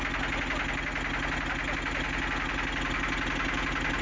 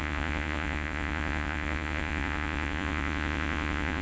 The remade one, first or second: second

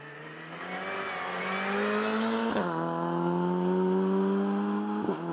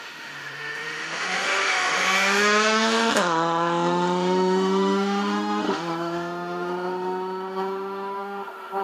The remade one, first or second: second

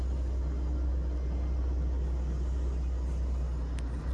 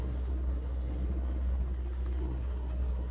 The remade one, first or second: second